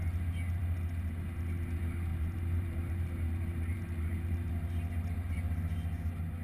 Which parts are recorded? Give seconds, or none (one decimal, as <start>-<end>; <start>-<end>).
0.0-2.1; 4.5-6.4